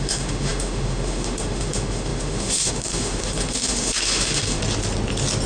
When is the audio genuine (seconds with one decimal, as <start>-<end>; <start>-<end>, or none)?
4.6-5.5